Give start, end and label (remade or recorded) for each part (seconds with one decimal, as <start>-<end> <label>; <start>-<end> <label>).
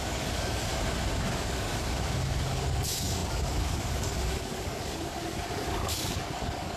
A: 0.0-0.7 remade; 0.7-1.3 recorded; 1.3-6.8 remade